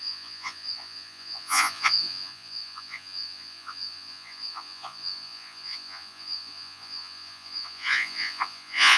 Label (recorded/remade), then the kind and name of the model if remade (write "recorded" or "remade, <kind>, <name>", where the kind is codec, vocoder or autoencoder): remade, vocoder, Vocos